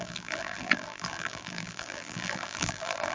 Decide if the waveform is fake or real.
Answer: fake